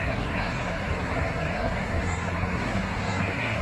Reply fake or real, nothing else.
fake